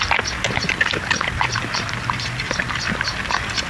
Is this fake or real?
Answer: real